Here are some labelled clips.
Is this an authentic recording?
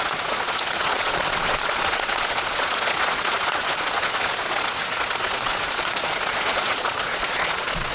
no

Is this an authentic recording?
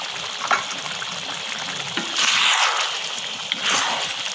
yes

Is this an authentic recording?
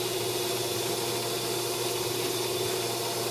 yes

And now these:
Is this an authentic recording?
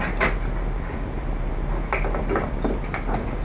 yes